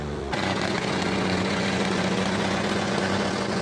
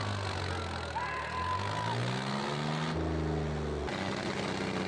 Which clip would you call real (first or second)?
second